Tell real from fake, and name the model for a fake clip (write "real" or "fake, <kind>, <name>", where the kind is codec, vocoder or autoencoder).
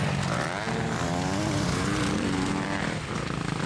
real